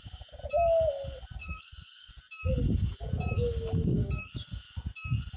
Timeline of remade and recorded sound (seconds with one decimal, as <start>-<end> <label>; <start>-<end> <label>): 0.0-1.4 recorded; 1.4-2.1 remade; 2.1-3.8 recorded; 3.8-4.3 remade; 4.3-5.4 recorded